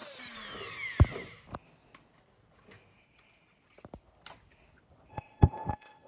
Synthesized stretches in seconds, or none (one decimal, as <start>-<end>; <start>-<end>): 5.1-6.1